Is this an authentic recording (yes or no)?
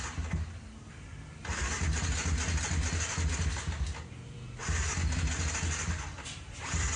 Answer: yes